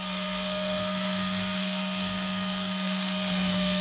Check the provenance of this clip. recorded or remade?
remade